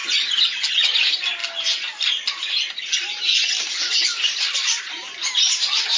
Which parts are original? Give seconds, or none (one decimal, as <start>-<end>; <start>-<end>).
0.0-6.0